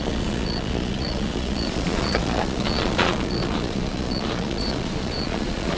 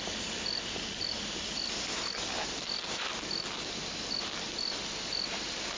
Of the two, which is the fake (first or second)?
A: first